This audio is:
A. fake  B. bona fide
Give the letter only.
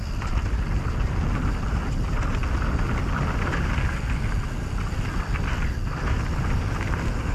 B